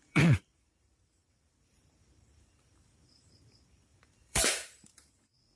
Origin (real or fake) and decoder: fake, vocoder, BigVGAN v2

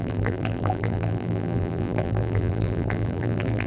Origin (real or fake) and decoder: fake, vocoder, BigVGAN v2